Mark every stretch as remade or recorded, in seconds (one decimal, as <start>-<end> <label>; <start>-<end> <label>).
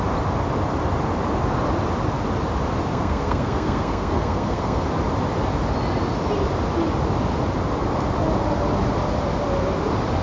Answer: 0.0-2.9 recorded; 2.9-4.8 remade; 4.8-10.2 recorded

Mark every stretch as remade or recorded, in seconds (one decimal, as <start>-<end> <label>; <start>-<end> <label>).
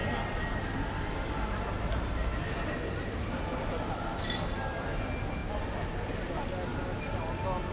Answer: 0.0-7.7 recorded